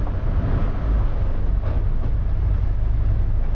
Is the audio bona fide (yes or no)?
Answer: yes